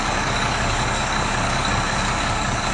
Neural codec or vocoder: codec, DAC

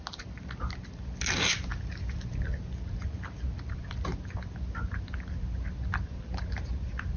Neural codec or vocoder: none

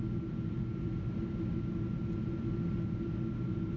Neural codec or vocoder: none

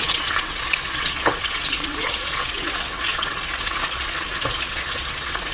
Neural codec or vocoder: vocoder, WaveNeXt